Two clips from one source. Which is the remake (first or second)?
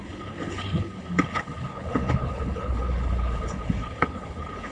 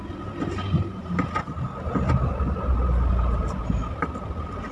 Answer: first